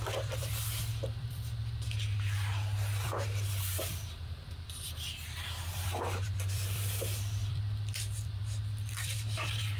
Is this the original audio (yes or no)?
no